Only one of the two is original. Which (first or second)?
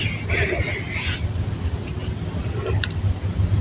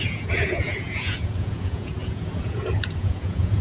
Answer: first